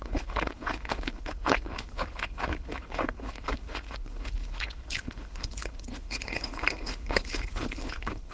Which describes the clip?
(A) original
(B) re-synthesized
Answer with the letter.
B